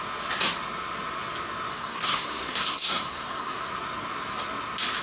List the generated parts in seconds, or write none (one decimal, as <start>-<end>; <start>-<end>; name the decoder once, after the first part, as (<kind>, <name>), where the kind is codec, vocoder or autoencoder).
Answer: 1.7-3.7 (codec, SNAC)